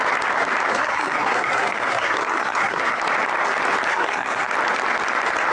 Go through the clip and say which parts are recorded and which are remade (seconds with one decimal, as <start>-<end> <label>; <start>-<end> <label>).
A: 0.0-0.7 recorded; 0.7-3.0 remade; 3.0-3.9 recorded; 3.9-4.5 remade; 4.5-5.5 recorded